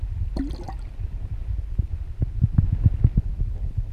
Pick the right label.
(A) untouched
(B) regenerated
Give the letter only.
A